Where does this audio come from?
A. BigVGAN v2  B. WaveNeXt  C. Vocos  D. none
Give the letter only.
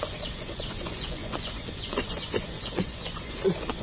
C